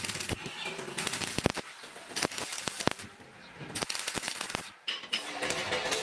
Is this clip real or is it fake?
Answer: fake